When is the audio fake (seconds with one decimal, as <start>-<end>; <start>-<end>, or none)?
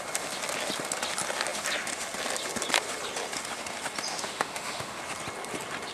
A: 4.1-5.0